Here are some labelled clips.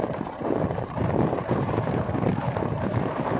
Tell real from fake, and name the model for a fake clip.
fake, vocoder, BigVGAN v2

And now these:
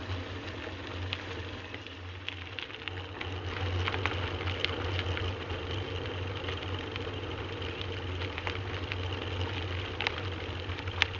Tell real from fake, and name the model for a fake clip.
real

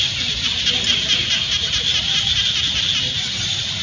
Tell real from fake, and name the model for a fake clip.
real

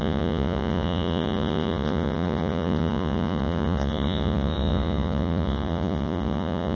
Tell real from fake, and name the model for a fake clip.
fake, vocoder, Vocos